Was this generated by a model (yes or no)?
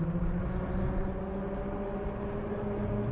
no